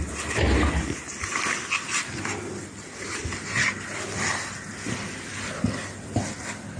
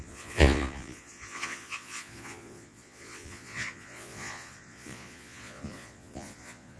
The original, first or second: first